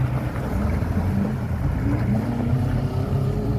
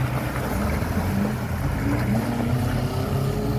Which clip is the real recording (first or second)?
second